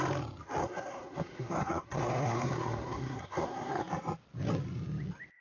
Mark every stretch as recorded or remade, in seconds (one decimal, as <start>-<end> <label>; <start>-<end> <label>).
0.0-0.6 recorded; 0.6-3.8 remade; 3.8-5.4 recorded